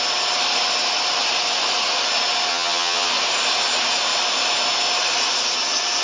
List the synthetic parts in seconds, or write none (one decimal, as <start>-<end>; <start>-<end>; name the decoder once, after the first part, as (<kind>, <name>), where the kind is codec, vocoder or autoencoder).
2.5-3.1 (vocoder, HiFi-GAN)